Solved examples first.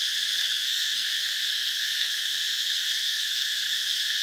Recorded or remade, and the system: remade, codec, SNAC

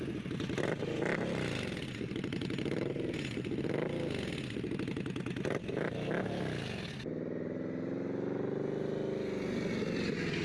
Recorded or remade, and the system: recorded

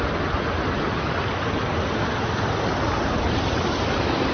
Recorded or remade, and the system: recorded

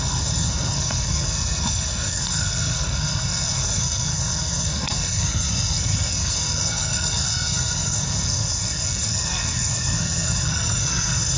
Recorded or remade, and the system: remade, codec, SNAC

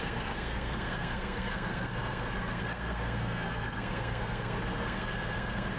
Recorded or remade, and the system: remade, codec, SNAC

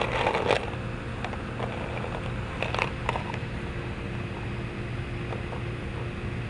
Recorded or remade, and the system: recorded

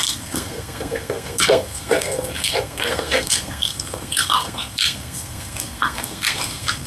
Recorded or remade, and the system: remade, codec, SNAC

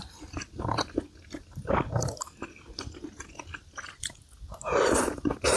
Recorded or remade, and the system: recorded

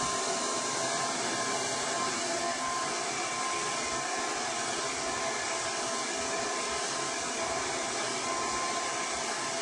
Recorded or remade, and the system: recorded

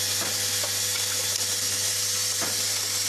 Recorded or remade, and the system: recorded